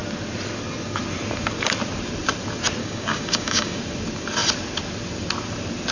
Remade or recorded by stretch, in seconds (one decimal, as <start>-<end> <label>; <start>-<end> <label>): 0.0-2.8 recorded; 2.8-3.8 remade; 3.8-5.9 recorded